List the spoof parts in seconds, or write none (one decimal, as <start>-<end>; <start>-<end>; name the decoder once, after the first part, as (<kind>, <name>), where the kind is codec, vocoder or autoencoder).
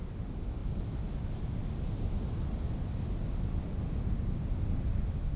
none